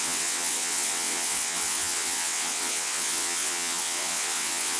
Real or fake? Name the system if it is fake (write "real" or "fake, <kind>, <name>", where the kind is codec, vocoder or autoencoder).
fake, vocoder, WaveNeXt